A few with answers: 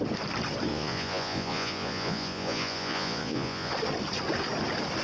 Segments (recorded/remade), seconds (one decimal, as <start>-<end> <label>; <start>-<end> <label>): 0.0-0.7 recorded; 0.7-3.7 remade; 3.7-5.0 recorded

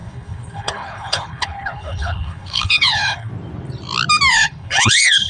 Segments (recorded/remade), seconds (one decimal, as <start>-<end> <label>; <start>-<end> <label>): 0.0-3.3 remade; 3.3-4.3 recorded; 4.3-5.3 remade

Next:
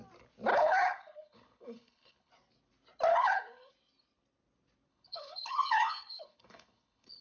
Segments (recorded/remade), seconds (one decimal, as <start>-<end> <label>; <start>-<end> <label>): 0.0-0.5 recorded; 0.5-2.3 remade; 2.3-3.1 recorded; 3.1-3.7 remade; 3.7-4.9 recorded; 4.9-7.2 remade

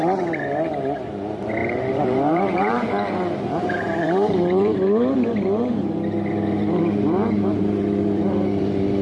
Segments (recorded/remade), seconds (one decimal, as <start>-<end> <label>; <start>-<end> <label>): 0.0-9.0 remade

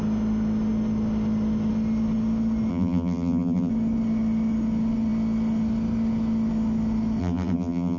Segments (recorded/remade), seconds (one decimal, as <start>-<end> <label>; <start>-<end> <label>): 0.0-2.7 recorded; 2.7-3.7 remade; 3.7-7.2 recorded; 7.2-8.0 remade

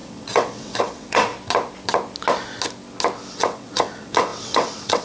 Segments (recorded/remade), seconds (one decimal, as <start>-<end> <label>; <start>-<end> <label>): 0.0-1.3 remade; 1.3-3.3 recorded; 3.3-5.0 remade

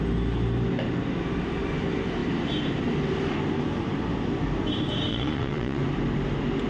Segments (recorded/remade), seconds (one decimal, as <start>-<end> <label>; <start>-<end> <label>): 0.0-5.1 recorded; 5.1-5.8 remade; 5.8-6.7 recorded

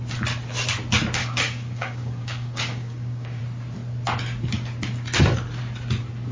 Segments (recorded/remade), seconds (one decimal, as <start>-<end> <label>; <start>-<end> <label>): 0.0-1.2 recorded; 1.2-3.4 remade; 3.4-6.3 recorded